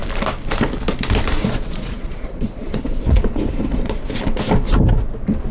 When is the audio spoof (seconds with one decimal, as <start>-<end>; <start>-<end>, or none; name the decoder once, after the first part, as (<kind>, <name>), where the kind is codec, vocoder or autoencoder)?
1.4-4.0 (vocoder, Vocos)